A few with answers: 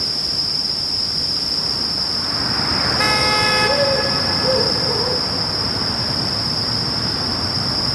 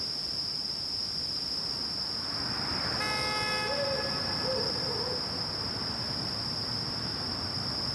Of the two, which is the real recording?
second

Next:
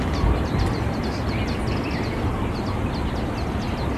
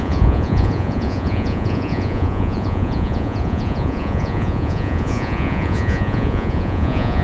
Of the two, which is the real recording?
first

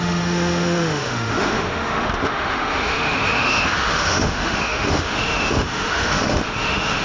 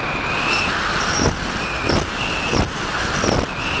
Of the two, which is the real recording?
second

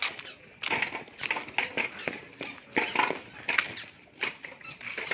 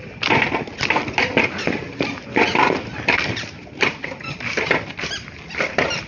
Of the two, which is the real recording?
first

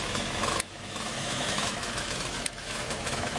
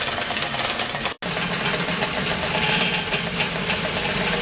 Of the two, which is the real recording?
second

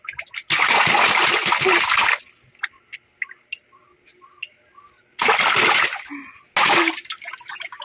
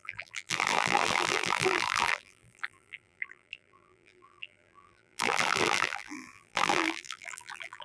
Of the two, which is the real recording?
first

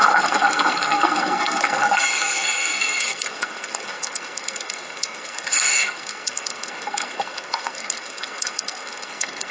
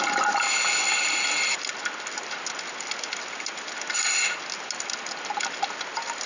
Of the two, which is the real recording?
second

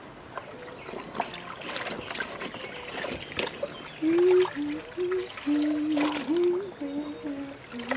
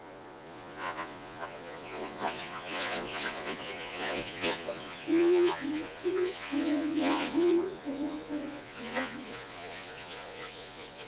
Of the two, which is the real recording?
first